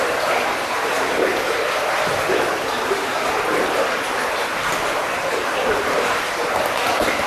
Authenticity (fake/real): fake